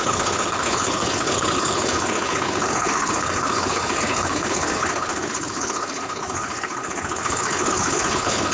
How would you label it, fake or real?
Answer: fake